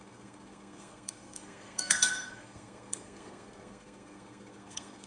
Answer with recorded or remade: remade